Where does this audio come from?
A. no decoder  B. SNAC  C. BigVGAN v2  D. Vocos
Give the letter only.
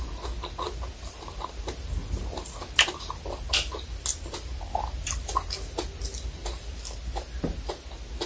A